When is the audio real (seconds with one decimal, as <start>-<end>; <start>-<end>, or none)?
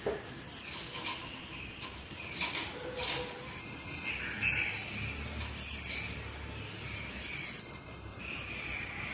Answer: 0.0-3.6; 4.1-7.6; 8.2-9.1